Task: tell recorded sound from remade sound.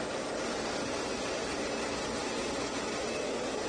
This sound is recorded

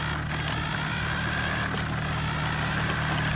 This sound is recorded